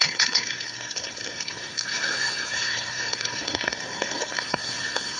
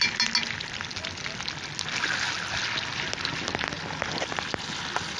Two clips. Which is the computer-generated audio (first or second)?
first